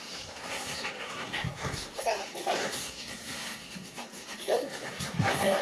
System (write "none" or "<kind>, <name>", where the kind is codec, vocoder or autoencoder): codec, SNAC